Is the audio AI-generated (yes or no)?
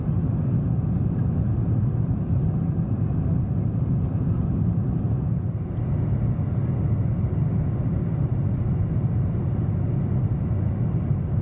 no